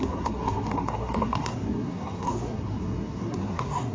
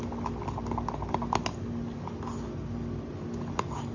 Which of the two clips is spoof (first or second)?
first